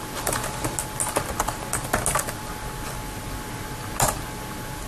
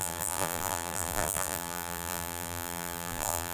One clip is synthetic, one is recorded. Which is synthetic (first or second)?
second